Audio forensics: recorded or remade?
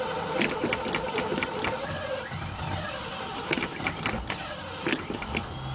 recorded